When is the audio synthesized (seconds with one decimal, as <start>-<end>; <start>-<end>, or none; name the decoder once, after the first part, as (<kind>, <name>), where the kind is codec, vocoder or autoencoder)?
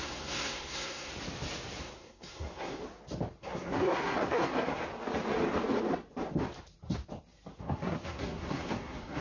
0.0-1.1 (codec, SNAC); 1.8-2.8; 3.4-4.8; 7.6-9.2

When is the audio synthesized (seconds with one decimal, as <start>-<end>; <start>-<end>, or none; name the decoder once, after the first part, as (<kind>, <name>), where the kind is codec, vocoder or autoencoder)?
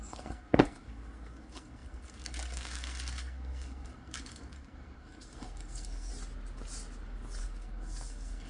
0.0-6.1 (codec, SNAC); 7.4-8.5